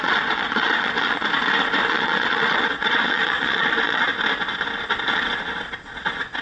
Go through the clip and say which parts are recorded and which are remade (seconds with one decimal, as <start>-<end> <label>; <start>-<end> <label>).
0.0-1.3 remade; 1.3-1.9 recorded; 1.9-4.1 remade; 4.1-5.1 recorded; 5.1-6.4 remade